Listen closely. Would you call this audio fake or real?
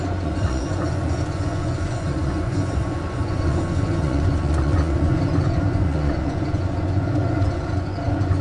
fake